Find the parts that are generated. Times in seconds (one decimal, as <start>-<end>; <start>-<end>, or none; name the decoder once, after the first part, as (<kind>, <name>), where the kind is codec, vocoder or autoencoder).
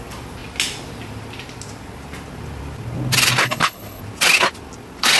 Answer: 3.4-4.0 (codec, HILCodec)